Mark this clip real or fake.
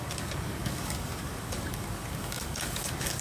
fake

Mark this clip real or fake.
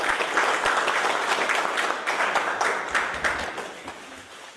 real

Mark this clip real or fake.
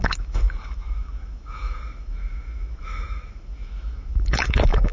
fake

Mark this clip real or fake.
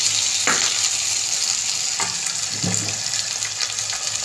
real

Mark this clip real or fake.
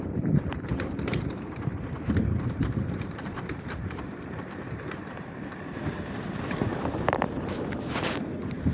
fake